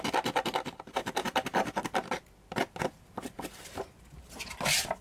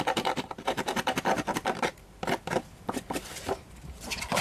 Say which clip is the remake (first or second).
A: second